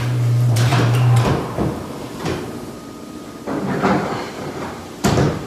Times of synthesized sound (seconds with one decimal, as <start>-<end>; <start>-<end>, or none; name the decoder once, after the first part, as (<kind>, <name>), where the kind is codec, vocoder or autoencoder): 0.0-5.5 (vocoder, BigVGAN v2)